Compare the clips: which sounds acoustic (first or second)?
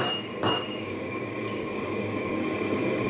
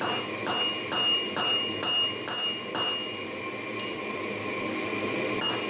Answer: second